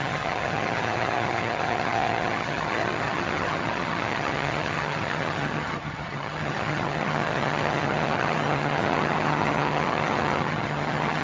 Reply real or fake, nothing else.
fake